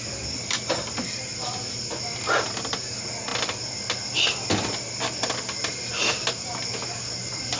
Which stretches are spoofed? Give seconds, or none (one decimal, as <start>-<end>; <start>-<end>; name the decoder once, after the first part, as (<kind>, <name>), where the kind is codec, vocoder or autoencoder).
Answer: none

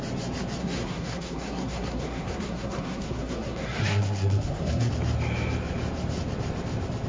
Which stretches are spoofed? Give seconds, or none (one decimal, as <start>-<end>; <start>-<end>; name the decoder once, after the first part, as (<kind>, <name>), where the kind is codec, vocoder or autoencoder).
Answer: 0.6-4.9 (codec, SNAC)

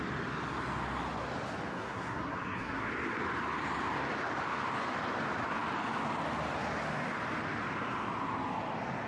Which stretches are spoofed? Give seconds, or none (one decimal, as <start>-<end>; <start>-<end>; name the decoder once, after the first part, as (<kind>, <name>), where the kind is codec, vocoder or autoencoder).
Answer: 1.7-2.9 (codec, SNAC)

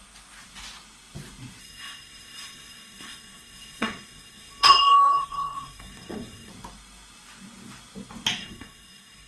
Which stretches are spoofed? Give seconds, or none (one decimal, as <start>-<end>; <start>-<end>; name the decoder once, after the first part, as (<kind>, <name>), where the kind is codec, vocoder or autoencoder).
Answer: 1.6-6.5 (codec, SNAC); 8.4-9.3

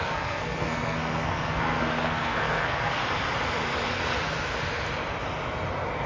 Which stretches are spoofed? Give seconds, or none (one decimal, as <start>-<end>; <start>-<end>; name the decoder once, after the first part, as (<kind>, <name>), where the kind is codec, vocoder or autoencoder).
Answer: 0.0-3.0 (codec, SNAC)

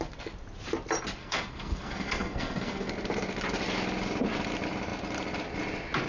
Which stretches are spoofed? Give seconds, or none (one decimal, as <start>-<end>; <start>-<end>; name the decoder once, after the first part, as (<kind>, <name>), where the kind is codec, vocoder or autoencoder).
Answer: 1.2-2.9 (codec, SNAC)

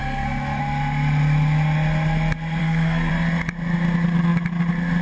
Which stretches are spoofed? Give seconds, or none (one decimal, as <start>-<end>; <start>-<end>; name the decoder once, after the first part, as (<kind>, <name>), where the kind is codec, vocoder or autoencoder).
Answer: 0.0-0.6 (codec, SNAC); 2.6-3.1

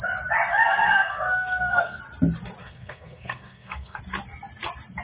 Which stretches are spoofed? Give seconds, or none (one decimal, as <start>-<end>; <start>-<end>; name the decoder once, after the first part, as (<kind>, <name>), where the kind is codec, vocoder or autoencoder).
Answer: 0.5-2.0 (codec, SNAC); 2.6-4.0